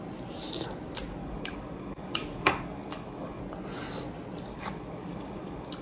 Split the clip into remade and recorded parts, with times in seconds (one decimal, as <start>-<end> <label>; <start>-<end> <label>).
0.0-1.2 recorded; 1.2-3.4 remade; 3.4-4.5 recorded; 4.5-5.8 remade